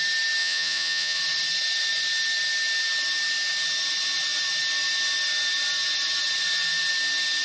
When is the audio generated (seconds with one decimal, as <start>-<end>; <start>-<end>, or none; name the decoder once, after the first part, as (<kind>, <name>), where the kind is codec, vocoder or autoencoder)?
0.4-1.2 (vocoder, Vocos)